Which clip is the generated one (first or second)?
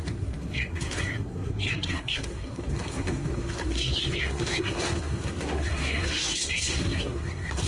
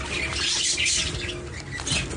first